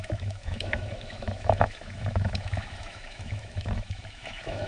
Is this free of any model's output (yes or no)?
no